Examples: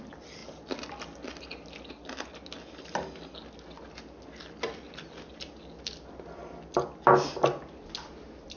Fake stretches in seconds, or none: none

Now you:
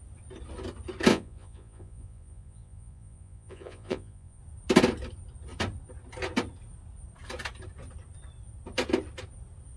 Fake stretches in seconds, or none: 1.1-4.4 (vocoder, Vocos)

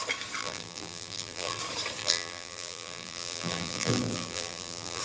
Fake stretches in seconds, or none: 0.4-1.6 (vocoder, BigVGAN v2); 2.0-5.0

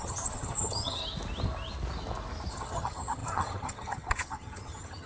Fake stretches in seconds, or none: 0.0-1.0 (vocoder, HiFi-GAN); 2.5-5.1

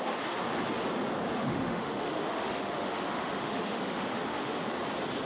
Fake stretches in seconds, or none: 1.4-4.6 (autoencoder, DAC-VAE)